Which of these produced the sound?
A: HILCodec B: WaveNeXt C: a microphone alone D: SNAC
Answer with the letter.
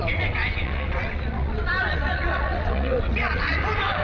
B